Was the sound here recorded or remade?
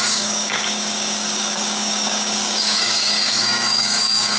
remade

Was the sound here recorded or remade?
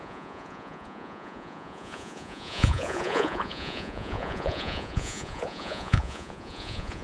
remade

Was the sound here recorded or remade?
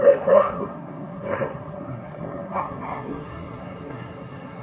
remade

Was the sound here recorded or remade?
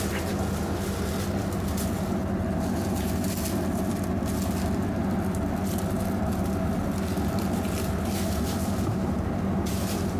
recorded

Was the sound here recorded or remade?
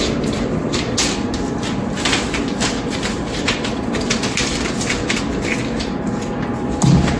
recorded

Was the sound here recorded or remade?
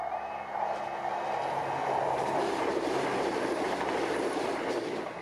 recorded